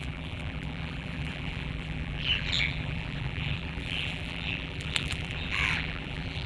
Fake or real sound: fake